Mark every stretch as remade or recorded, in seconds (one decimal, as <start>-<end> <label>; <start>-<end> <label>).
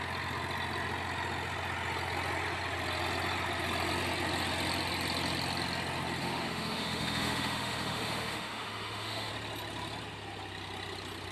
0.0-6.2 recorded; 6.2-9.3 remade; 9.3-11.3 recorded